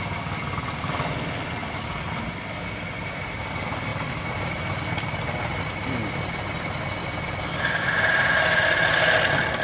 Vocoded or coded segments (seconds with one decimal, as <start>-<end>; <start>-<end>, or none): none